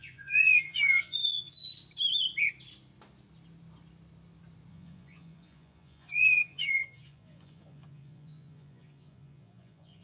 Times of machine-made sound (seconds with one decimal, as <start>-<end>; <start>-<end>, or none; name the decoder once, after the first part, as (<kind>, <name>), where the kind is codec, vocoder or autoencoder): 0.0-1.6 (vocoder, Vocos); 4.7-10.0